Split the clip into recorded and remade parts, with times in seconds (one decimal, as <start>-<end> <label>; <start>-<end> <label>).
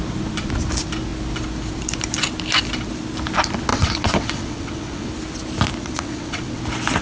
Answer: 0.0-3.7 recorded; 3.7-5.1 remade; 5.1-5.8 recorded; 5.8-6.6 remade; 6.6-7.0 recorded